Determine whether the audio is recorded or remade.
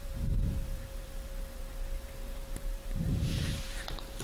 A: remade